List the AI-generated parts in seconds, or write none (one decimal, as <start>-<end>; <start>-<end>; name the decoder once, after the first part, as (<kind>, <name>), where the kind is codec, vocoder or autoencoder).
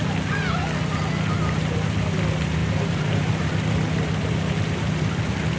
2.6-3.5 (vocoder, BigVGAN v2)